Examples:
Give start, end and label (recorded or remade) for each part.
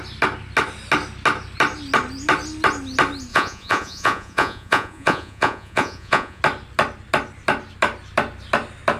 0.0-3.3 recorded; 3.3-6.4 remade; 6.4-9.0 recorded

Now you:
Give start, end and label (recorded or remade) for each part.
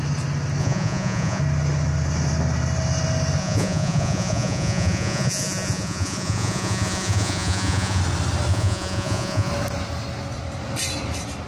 0.0-0.6 recorded; 0.6-1.4 remade; 1.4-3.4 recorded; 3.4-8.0 remade; 8.0-8.5 recorded; 8.5-9.5 remade; 9.5-11.5 recorded